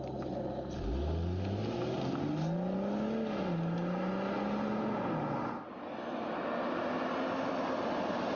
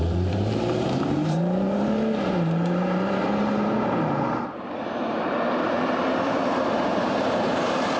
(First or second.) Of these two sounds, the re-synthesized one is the second